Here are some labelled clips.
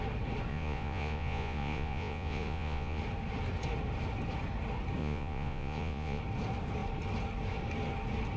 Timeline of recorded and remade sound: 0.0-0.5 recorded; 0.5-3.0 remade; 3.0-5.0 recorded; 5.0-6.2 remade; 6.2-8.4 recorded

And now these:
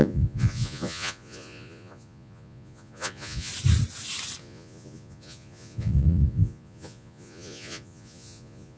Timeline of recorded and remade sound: 0.0-3.5 remade; 3.5-4.4 recorded; 4.4-8.8 remade

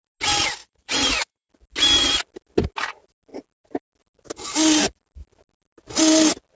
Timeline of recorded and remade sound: 0.0-0.6 recorded; 0.6-1.5 remade; 1.5-6.6 recorded

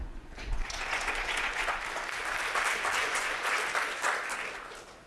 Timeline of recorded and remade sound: 0.0-1.8 remade; 1.8-3.0 recorded; 3.0-3.5 remade; 3.5-5.1 recorded

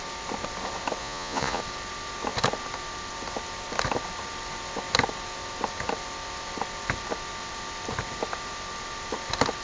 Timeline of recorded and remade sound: 0.0-1.0 recorded; 1.0-1.6 remade; 1.6-9.6 recorded

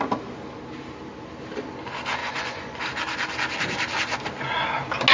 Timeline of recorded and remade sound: 0.0-2.2 recorded; 2.2-2.8 remade; 2.8-5.1 recorded

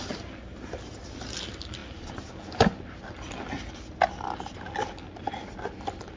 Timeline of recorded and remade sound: 0.0-6.2 recorded

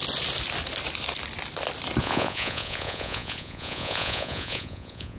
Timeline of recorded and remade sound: 0.0-2.0 recorded; 2.0-5.2 remade